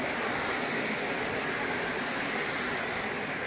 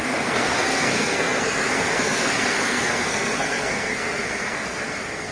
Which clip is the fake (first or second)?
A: second